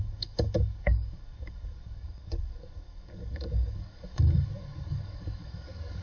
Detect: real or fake fake